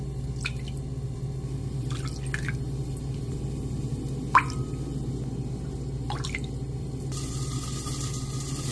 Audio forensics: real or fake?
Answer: real